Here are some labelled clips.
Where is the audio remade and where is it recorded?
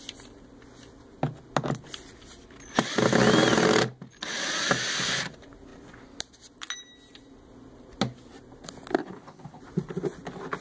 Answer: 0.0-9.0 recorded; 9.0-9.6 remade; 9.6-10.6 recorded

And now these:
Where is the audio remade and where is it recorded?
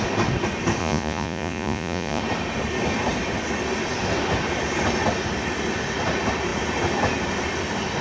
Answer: 0.0-0.8 recorded; 0.8-2.2 remade; 2.2-8.0 recorded